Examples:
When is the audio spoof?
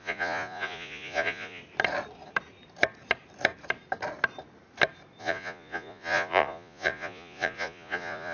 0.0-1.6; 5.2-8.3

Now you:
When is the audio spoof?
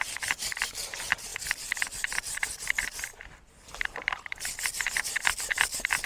none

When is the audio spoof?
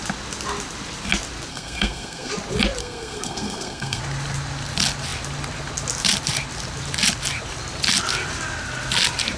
1.5-2.3; 2.8-4.0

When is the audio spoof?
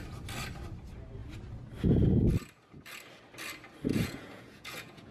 3.9-5.1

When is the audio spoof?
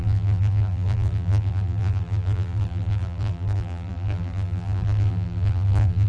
0.0-6.1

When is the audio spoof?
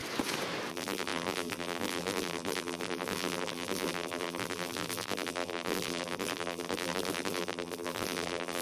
0.7-8.6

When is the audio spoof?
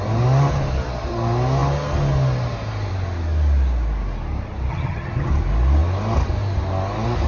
4.7-5.3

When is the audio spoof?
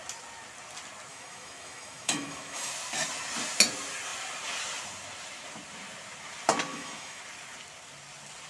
1.1-2.7; 6.7-7.2